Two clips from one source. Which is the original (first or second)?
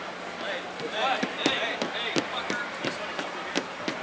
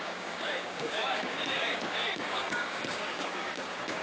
first